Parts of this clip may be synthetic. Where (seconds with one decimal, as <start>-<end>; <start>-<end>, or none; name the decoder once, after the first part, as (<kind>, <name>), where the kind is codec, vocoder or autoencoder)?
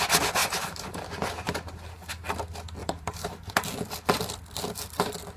0.4-1.0 (vocoder, BigVGAN v2); 2.8-3.5